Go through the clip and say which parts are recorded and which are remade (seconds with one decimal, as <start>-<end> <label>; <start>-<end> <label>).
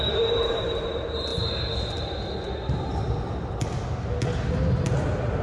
0.0-5.4 recorded